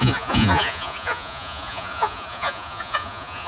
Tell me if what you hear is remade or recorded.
remade